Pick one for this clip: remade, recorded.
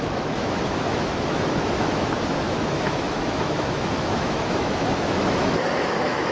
remade